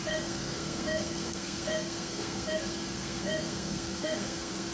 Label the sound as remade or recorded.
remade